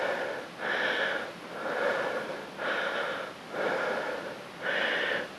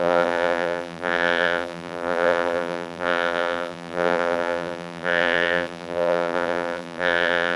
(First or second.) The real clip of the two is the first